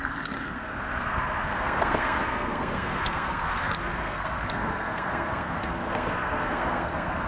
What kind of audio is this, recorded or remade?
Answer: remade